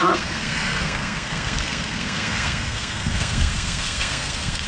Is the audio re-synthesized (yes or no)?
yes